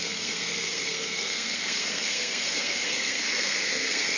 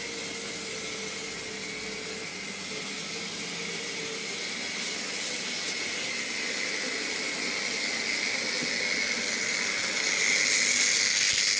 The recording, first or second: second